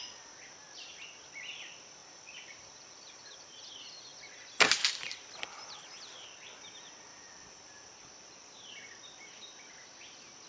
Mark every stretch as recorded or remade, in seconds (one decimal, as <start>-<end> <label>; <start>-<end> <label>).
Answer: 0.0-2.0 recorded; 2.0-3.6 remade; 3.6-7.1 recorded; 7.1-8.1 remade; 8.1-10.5 recorded